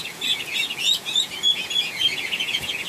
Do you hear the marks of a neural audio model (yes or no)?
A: yes